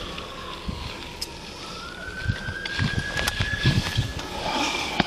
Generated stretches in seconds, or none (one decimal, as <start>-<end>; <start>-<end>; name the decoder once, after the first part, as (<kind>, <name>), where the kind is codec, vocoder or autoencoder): 0.0-1.3 (codec, DAC); 3.4-5.1